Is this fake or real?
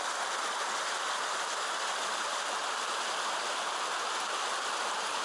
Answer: real